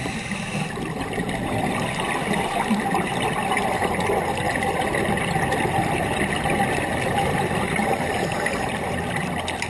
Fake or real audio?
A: real